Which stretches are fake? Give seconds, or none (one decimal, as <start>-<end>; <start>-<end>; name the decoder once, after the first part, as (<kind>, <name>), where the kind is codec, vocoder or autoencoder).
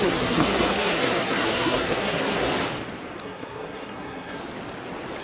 0.0-2.5 (codec, SNAC); 3.2-4.4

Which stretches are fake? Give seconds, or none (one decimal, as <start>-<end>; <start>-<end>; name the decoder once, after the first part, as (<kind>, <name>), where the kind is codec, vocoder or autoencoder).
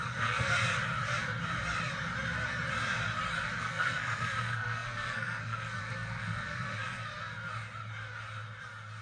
0.0-0.6 (codec, SNAC); 3.6-7.1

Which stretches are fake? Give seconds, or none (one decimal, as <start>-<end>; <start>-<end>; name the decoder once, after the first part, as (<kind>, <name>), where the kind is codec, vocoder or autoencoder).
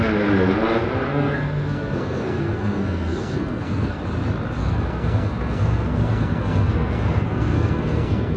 1.1-4.0 (codec, SNAC); 4.6-8.4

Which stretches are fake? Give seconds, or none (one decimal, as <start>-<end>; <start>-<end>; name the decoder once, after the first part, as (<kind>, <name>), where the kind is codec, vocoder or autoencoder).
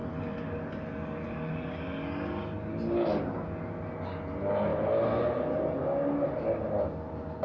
none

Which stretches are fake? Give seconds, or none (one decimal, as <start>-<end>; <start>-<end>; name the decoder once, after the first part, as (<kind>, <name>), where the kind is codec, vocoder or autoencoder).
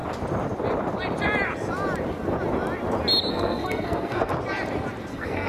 3.3-4.3 (codec, SNAC); 5.1-5.5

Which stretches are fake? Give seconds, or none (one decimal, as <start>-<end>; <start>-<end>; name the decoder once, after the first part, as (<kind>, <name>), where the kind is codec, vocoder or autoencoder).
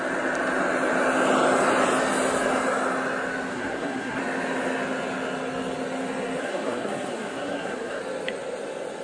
3.5-4.2 (codec, SNAC); 6.4-8.0